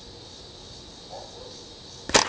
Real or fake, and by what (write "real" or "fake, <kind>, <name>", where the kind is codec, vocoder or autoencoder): real